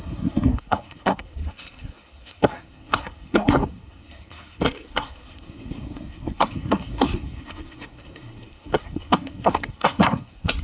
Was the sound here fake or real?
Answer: fake